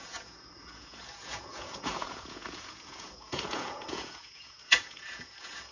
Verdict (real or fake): fake